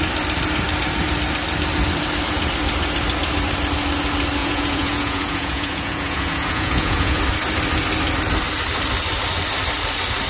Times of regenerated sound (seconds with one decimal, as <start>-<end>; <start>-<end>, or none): 4.4-7.2